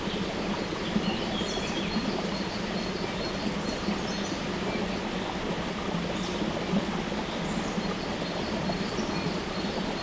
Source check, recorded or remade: recorded